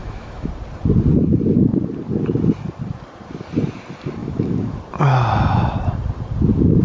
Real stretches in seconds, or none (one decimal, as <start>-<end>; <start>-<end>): 0.5-4.2; 4.8-6.8